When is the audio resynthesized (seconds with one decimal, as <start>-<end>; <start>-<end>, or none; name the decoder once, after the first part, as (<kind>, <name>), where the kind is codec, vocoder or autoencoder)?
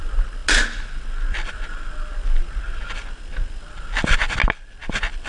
none